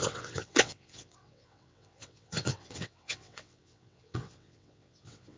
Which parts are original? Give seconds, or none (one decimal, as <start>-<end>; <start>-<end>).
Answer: none

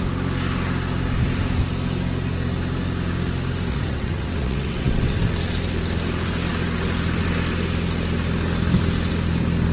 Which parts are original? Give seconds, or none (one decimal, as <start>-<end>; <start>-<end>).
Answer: 0.0-3.7; 5.2-9.7

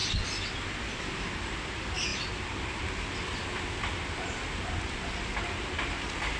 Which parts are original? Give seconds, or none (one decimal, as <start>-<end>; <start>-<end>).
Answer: 0.0-6.4

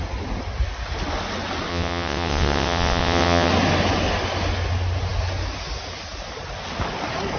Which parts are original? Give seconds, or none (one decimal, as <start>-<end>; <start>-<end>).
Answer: 0.0-1.7; 3.5-7.4

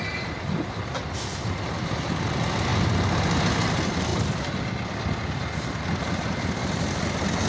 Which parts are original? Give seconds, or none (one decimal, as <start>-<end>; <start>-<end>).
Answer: 0.0-7.5

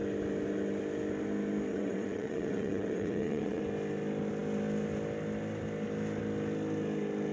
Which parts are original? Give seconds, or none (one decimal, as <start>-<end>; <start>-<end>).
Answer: 0.0-1.7; 3.6-7.3

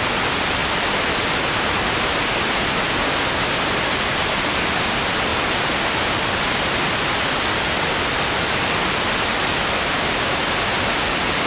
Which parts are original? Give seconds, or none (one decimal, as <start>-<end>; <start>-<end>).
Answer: 0.0-11.5

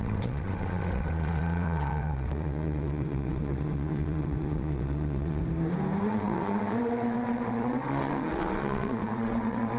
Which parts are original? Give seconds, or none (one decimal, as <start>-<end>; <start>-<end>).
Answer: 5.4-6.0